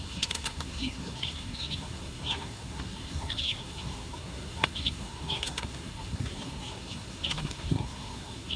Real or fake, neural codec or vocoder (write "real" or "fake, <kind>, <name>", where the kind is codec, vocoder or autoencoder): fake, codec, SNAC